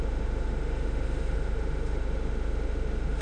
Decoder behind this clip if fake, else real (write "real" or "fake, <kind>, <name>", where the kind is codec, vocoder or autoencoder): fake, autoencoder, DAC-VAE